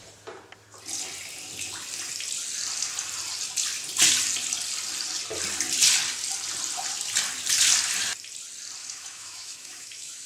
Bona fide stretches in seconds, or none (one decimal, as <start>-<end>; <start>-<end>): 0.0-8.8